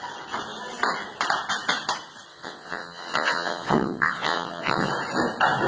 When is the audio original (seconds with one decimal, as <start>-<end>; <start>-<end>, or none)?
0.0-2.3; 4.9-5.7